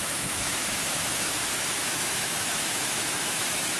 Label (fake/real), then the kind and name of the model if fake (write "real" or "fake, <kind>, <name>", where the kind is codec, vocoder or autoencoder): fake, autoencoder, DAC-VAE